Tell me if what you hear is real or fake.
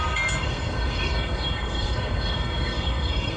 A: fake